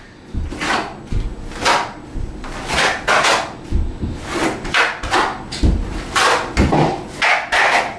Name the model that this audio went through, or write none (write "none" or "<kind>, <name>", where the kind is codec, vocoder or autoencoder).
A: none